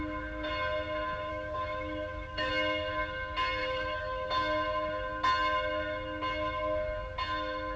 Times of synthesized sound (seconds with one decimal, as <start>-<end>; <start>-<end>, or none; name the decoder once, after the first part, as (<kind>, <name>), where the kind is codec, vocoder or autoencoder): 1.3-2.5 (autoencoder, DAC-VAE); 3.6-4.3